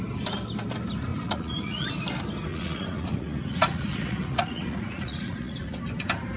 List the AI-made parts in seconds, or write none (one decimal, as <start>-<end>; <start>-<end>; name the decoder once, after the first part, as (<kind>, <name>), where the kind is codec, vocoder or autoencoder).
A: 1.1-1.9 (vocoder, Vocos); 2.5-5.8